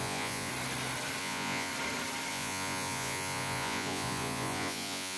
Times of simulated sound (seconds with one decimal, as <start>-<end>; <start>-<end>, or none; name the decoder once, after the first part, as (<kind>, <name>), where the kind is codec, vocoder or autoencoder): 0.0-0.5 (vocoder, Vocos); 1.2-1.7; 2.3-5.2